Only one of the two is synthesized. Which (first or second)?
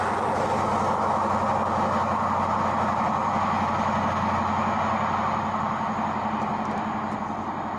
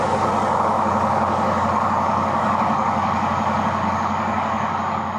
second